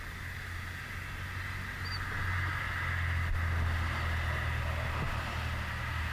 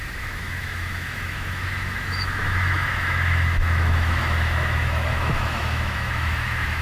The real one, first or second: first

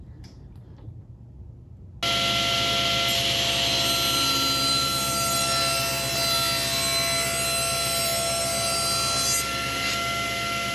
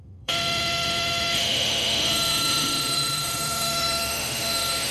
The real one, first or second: first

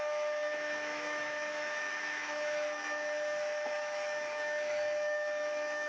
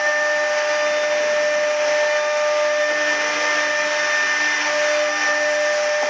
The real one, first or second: second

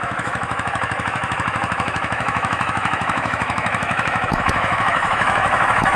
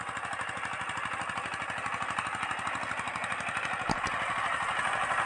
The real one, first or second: second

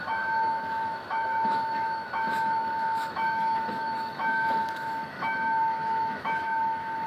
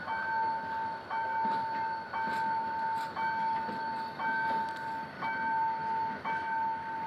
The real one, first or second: second